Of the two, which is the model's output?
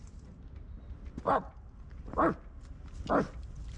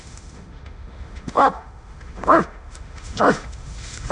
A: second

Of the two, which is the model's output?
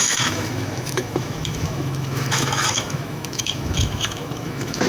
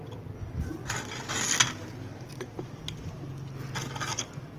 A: first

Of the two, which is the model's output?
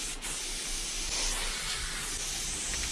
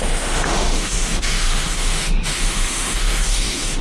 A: second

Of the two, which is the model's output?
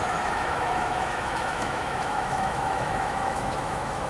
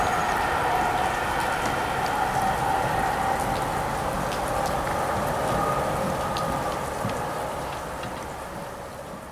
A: first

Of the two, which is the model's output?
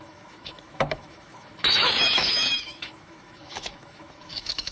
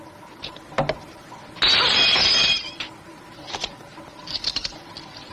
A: first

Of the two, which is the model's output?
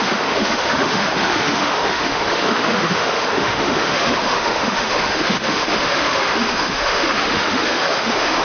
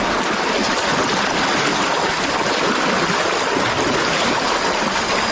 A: first